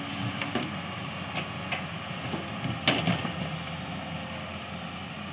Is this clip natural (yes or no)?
yes